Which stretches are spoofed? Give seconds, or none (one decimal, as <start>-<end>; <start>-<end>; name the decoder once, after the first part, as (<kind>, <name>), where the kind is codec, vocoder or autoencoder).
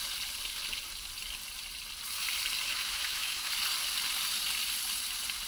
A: 2.7-3.5 (autoencoder, DAC-VAE)